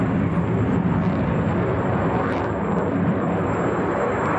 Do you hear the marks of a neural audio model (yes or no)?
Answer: yes